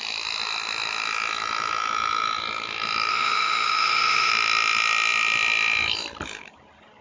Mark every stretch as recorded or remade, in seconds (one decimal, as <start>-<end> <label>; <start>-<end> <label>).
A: 0.0-3.1 recorded; 3.1-4.3 remade; 4.3-7.0 recorded